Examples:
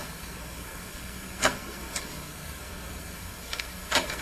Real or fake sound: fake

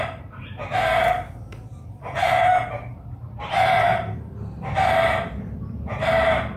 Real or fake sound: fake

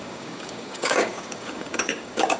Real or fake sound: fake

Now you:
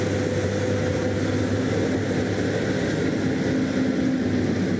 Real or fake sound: real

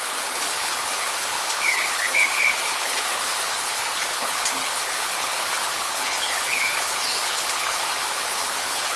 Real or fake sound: fake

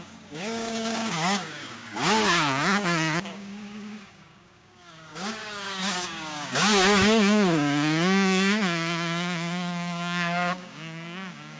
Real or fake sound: fake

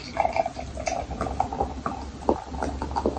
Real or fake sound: real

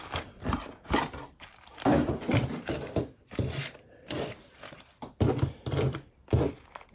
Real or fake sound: fake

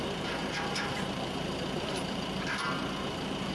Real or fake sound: fake